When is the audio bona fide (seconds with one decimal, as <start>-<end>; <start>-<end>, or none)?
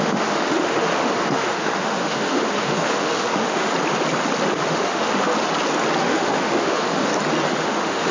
3.7-4.6; 5.3-6.0; 7.1-7.6